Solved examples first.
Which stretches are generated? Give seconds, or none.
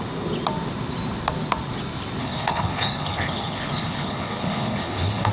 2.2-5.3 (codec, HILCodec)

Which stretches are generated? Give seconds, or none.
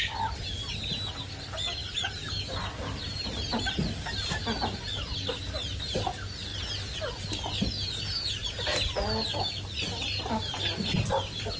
none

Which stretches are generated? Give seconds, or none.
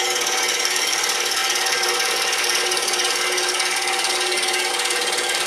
0.0-5.5 (codec, DAC)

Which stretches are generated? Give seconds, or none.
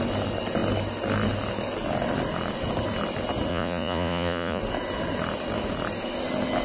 3.5-4.6 (vocoder, Vocos)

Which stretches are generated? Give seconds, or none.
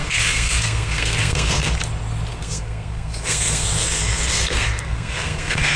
0.0-1.7 (codec, SNAC); 2.3-5.8